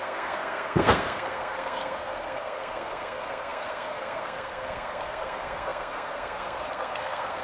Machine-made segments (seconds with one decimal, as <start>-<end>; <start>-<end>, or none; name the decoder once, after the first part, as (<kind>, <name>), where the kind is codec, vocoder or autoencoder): 0.0-7.4 (codec, SNAC)